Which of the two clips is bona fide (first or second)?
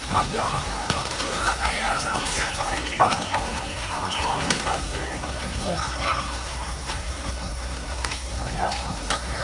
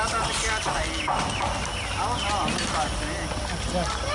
second